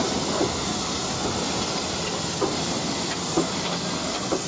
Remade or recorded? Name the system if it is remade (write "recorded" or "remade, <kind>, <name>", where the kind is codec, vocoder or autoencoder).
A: recorded